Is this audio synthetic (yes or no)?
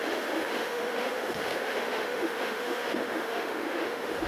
yes